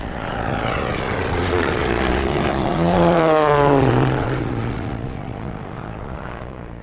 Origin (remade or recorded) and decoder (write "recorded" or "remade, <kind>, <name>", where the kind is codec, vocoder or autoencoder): remade, vocoder, Vocos